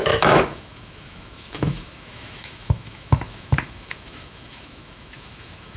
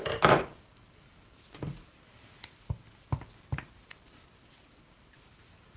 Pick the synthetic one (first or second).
first